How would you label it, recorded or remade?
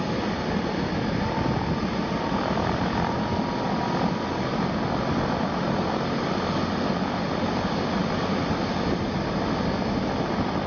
recorded